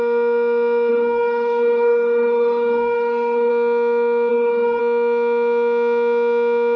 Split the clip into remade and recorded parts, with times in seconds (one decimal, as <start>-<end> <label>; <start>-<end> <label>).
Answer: 0.0-0.9 recorded; 0.9-3.5 remade; 3.5-4.3 recorded; 4.3-4.8 remade; 4.8-6.8 recorded